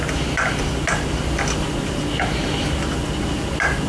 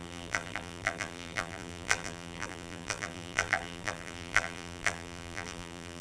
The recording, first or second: first